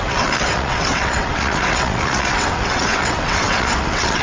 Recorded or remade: remade